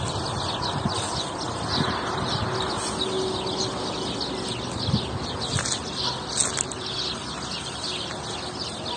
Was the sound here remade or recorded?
recorded